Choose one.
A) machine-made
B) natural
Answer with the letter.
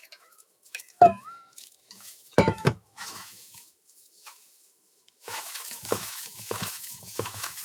A